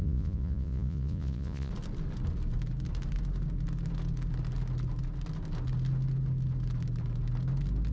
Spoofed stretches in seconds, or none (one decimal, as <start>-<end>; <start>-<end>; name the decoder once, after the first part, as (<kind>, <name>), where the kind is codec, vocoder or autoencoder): 0.0-1.7 (vocoder, Vocos)

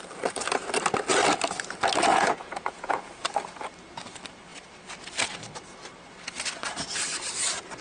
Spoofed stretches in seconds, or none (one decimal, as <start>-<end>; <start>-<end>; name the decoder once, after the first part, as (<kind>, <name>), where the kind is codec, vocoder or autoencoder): 2.1-3.2 (vocoder, Vocos)

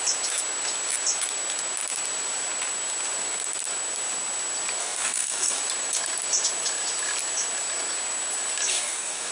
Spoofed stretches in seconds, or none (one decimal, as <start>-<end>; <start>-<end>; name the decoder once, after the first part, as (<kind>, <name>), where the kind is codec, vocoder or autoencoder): 4.8-5.6 (codec, DAC); 8.7-9.3

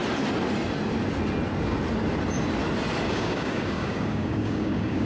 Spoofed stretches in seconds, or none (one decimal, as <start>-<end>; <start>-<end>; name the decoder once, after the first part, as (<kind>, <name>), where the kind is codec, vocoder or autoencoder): 3.1-5.1 (codec, DAC)